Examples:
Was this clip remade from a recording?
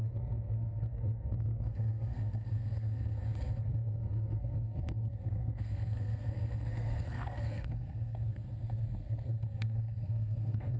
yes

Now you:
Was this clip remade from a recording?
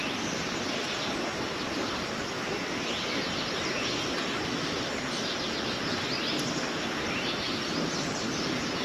no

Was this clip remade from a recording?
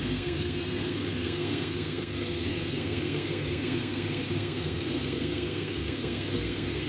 yes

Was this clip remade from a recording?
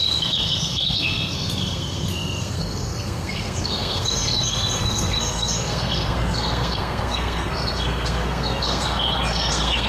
yes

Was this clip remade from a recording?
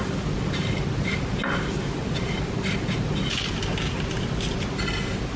no